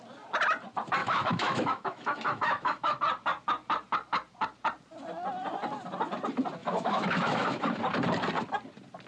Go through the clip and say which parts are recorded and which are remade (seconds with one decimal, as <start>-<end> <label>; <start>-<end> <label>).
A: 0.0-1.0 recorded; 1.0-3.0 remade; 3.0-6.6 recorded; 6.6-7.8 remade; 7.8-9.1 recorded